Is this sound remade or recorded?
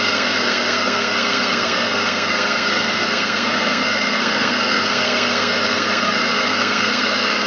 remade